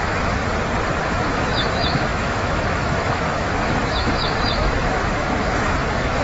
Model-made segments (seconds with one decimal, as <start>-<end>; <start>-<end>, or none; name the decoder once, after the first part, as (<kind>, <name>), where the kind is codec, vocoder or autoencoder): 0.0-0.4 (autoencoder, DAC-VAE); 1.0-6.2